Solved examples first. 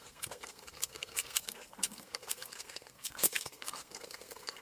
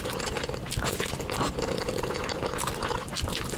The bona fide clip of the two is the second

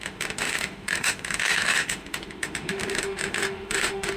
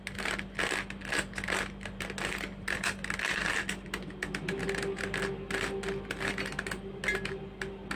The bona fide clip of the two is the second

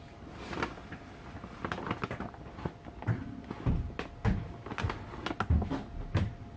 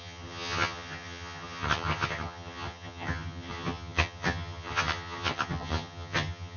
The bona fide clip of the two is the first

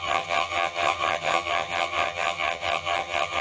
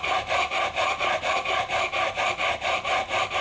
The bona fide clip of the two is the second